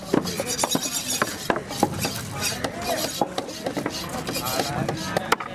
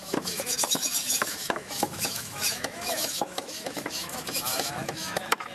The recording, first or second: first